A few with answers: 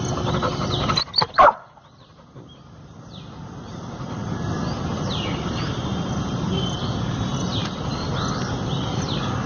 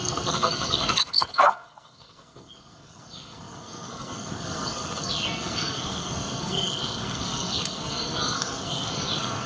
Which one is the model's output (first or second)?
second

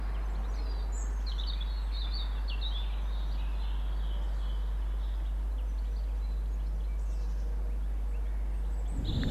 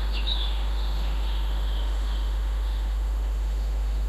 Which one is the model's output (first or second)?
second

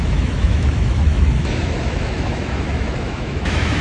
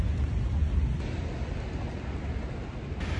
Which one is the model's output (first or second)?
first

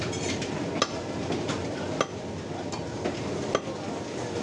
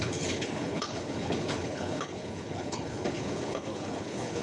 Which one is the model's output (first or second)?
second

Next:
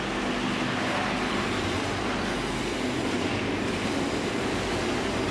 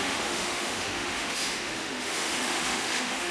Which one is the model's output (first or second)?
second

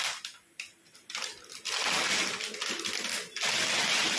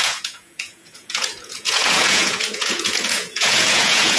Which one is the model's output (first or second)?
second